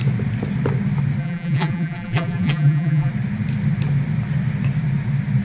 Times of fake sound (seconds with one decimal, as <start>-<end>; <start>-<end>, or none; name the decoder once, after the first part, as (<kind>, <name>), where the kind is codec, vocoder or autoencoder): 1.2-3.1 (vocoder, BigVGAN v2)